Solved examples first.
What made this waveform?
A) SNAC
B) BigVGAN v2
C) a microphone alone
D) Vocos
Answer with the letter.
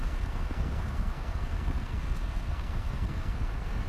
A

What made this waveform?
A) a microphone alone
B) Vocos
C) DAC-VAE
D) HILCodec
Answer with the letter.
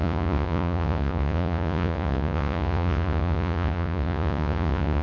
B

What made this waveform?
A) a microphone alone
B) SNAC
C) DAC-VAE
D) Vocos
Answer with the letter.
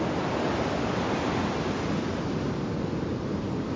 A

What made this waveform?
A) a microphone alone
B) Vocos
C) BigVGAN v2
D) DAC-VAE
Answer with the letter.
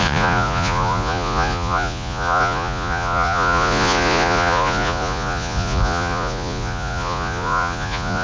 B